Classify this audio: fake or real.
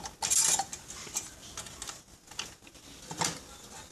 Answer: real